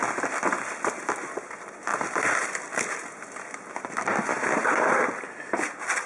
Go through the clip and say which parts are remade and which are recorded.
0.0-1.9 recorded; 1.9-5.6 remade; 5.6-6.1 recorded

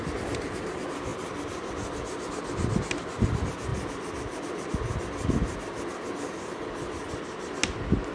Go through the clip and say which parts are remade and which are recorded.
0.0-8.1 recorded

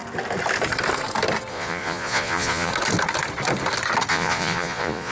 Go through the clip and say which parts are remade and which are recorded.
0.0-1.5 recorded; 1.5-2.7 remade; 2.7-4.1 recorded; 4.1-5.1 remade

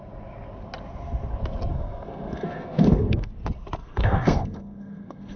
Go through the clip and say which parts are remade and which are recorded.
0.0-1.7 recorded; 1.7-3.3 remade; 3.3-3.8 recorded; 3.8-5.4 remade